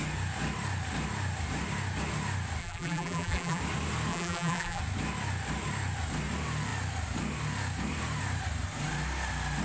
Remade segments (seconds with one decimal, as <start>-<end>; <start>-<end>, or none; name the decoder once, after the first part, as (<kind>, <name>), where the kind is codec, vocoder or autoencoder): 2.6-3.6 (vocoder, BigVGAN v2); 4.1-4.8